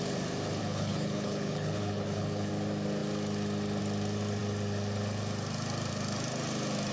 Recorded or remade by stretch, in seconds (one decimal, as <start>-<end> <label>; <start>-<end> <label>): 0.0-0.6 recorded; 0.6-2.5 remade; 2.5-6.9 recorded